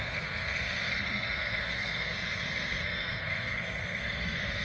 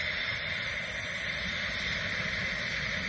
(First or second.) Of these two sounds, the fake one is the first